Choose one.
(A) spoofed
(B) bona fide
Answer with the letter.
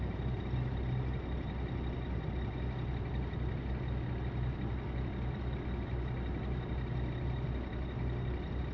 B